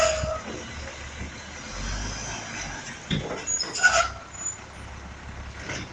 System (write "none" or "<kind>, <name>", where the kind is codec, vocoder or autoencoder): none